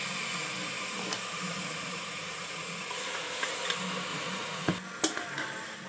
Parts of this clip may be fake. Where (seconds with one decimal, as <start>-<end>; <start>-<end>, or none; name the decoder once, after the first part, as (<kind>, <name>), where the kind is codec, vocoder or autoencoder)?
1.5-3.5 (vocoder, Vocos); 4.1-4.7